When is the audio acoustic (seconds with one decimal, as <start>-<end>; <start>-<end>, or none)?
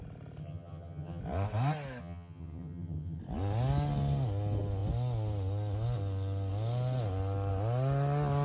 0.0-0.4; 1.2-2.0; 3.2-8.4